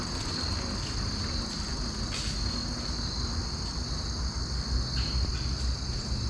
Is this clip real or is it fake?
real